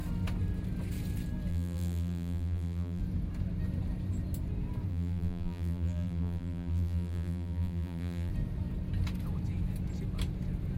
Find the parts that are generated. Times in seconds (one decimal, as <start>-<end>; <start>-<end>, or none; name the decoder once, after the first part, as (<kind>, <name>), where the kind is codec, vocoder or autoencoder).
1.5-3.0 (vocoder, BigVGAN v2); 4.9-8.3